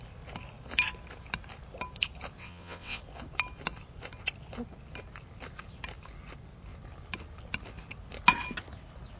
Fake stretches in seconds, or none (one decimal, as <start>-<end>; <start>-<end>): 2.4-3.0